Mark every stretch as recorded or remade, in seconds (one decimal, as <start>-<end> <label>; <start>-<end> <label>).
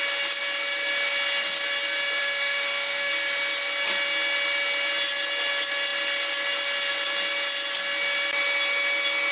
0.0-2.2 recorded; 2.2-3.1 remade; 3.1-9.3 recorded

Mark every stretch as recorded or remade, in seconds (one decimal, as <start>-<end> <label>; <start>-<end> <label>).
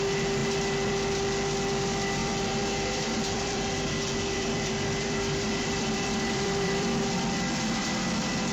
0.0-2.2 recorded; 2.2-7.0 remade; 7.0-8.5 recorded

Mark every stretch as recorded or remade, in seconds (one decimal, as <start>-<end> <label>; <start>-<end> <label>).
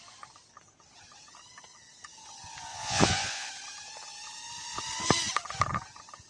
0.0-2.7 recorded; 2.7-3.5 remade; 3.5-6.3 recorded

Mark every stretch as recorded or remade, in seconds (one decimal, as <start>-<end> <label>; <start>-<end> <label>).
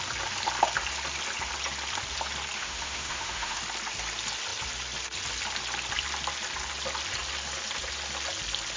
0.0-2.6 recorded; 2.6-3.6 remade; 3.6-8.8 recorded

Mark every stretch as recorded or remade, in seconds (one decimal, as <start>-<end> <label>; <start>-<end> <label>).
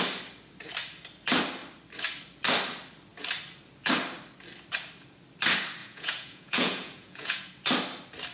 0.0-5.8 recorded; 5.8-7.5 remade; 7.5-8.3 recorded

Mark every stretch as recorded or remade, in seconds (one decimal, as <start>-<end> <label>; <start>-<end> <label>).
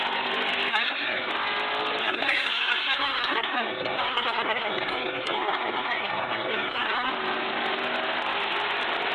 0.0-0.7 recorded; 0.7-1.3 remade; 1.3-2.0 recorded; 2.0-7.1 remade; 7.1-9.1 recorded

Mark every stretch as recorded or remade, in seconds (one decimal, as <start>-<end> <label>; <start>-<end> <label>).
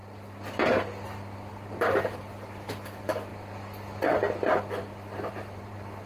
0.0-1.5 recorded; 1.5-3.3 remade; 3.3-5.3 recorded; 5.3-6.1 remade